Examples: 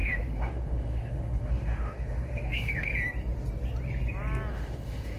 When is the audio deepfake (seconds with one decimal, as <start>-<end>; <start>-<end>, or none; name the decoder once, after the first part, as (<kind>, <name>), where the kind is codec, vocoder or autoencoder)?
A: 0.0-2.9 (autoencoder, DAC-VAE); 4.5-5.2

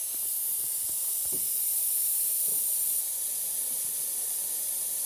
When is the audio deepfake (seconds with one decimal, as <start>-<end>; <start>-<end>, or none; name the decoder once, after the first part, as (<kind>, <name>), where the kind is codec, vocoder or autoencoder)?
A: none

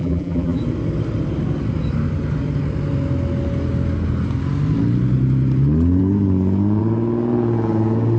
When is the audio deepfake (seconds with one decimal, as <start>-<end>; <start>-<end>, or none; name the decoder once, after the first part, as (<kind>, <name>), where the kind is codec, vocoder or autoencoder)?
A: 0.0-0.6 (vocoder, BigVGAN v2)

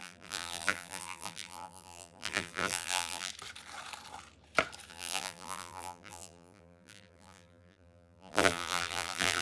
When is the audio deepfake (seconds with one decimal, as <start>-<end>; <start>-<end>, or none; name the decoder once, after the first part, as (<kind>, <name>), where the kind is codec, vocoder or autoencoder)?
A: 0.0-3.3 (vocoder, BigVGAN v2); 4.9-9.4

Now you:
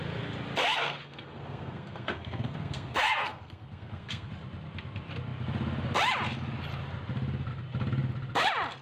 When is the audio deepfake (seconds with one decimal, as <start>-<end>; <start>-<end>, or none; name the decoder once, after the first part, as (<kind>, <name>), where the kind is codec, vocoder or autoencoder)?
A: 0.6-4.3 (codec, SNAC)

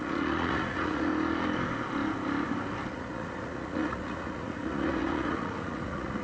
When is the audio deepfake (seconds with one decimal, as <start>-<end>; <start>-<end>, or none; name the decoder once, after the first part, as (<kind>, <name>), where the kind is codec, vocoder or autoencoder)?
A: 0.0-1.1 (vocoder, Vocos); 2.9-6.2